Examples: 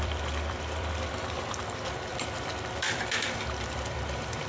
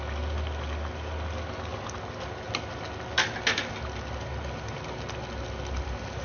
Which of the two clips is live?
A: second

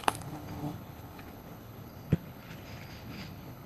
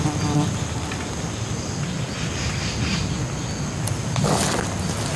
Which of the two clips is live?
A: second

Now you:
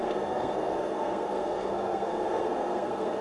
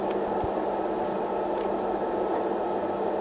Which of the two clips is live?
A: second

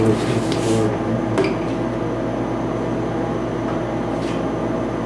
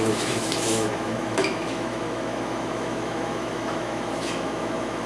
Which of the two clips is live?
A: first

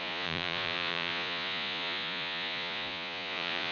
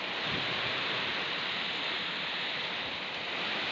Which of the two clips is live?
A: second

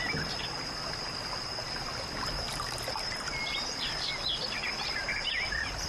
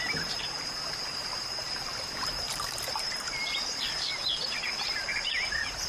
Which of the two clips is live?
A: first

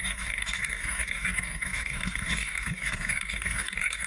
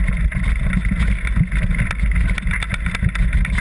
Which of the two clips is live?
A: second